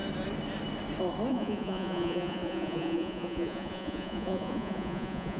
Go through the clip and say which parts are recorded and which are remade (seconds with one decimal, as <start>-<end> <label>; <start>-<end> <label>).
0.0-1.3 recorded; 1.3-5.4 remade